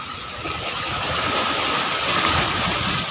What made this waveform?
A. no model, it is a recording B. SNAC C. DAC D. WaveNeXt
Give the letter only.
A